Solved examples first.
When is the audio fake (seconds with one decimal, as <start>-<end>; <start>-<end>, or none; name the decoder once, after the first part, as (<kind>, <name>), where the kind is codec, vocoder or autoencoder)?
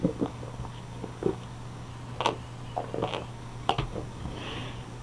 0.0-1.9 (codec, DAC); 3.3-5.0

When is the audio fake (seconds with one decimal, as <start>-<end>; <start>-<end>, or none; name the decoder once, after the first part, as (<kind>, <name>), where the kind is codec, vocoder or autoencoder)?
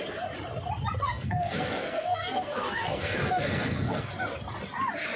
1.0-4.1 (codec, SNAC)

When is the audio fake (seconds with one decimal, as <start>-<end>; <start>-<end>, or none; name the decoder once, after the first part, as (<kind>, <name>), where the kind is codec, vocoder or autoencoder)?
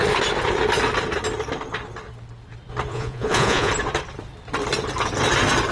2.9-3.7 (vocoder, Vocos)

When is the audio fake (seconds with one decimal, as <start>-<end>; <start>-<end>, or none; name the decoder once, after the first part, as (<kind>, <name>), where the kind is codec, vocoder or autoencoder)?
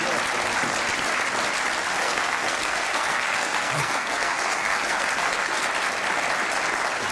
2.0-5.7 (codec, SNAC)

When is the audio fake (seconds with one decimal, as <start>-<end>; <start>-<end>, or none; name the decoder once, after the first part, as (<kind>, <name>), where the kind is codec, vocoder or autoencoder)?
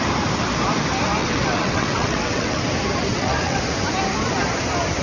1.2-2.6 (vocoder, WaveNeXt); 3.1-3.6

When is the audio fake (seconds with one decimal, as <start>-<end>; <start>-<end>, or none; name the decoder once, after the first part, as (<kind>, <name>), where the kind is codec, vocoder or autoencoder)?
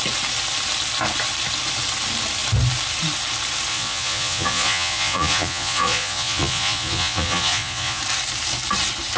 3.7-8.0 (vocoder, Vocos)